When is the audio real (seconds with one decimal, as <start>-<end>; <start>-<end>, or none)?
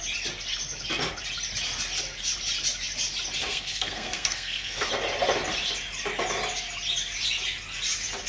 0.0-3.4; 4.9-8.3